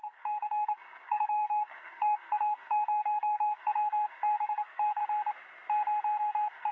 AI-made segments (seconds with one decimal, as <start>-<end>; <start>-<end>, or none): 0.0-5.0; 6.2-6.7